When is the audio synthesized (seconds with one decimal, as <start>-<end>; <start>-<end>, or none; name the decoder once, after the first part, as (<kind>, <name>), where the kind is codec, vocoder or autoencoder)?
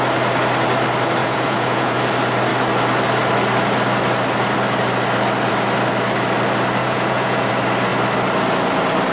1.2-2.0 (vocoder, Vocos); 6.8-7.5